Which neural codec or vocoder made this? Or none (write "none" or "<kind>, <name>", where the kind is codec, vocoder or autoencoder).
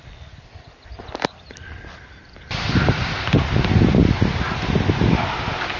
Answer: none